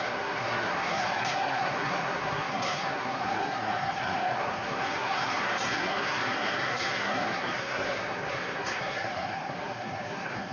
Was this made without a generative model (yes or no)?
no